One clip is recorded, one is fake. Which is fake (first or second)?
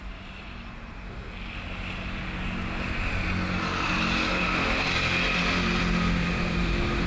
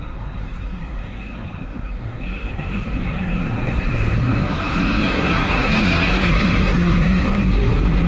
second